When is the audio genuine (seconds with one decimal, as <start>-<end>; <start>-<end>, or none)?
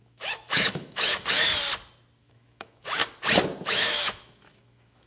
1.5-2.2; 3.0-3.6